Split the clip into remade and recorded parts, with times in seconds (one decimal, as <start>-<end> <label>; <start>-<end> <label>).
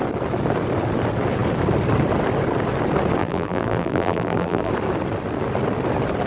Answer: 0.0-3.2 recorded; 3.2-4.7 remade; 4.7-6.3 recorded